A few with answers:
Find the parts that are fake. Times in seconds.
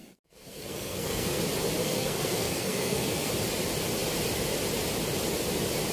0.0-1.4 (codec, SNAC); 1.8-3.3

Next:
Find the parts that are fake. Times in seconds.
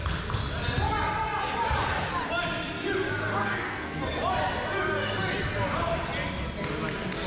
3.4-4.0 (codec, SNAC)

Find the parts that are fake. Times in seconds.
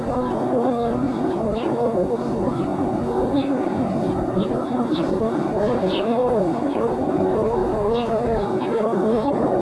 0.0-9.6 (codec, SNAC)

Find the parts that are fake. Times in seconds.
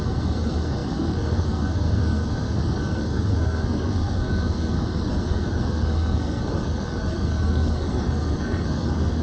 0.0-9.2 (codec, SNAC)